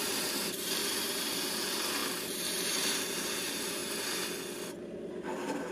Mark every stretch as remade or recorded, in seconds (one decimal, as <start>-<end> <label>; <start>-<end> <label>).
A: 0.0-0.8 remade; 0.8-1.6 recorded; 1.6-3.8 remade; 3.8-5.7 recorded